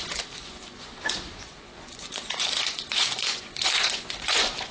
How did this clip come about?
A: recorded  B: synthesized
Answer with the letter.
B